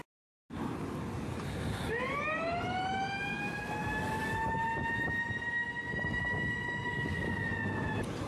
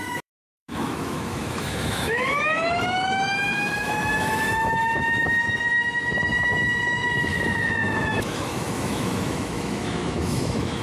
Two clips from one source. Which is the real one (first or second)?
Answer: first